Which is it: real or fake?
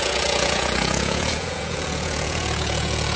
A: fake